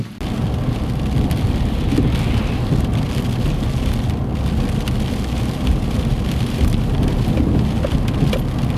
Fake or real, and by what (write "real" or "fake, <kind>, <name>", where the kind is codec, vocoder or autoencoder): real